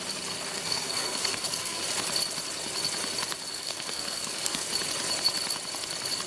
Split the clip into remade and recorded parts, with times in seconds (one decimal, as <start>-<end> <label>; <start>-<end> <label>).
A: 0.0-0.5 recorded; 0.5-1.8 remade; 1.8-3.5 recorded; 3.5-4.7 remade; 4.7-6.3 recorded